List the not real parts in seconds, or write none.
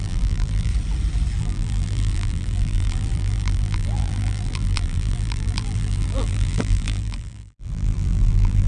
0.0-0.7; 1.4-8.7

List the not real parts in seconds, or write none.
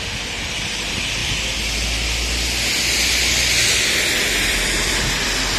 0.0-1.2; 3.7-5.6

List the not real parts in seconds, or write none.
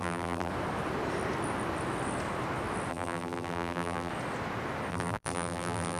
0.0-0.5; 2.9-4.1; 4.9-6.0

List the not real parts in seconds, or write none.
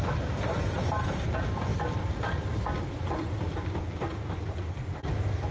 none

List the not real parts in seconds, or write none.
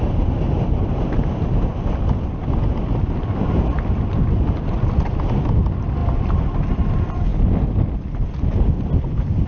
none